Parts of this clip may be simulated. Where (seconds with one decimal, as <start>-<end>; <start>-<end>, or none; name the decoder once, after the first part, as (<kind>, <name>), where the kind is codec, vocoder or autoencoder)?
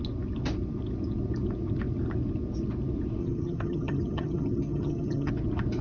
3.2-5.3 (vocoder, HiFi-GAN)